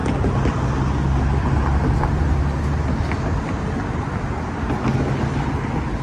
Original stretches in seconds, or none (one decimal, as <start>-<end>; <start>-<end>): 0.0-6.0